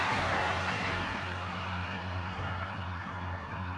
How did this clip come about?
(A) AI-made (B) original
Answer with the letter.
A